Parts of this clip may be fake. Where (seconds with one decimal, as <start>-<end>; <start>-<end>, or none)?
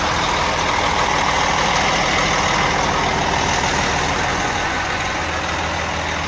4.3-5.2